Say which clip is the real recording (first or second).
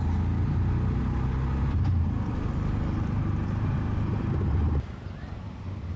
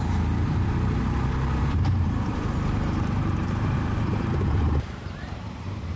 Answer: first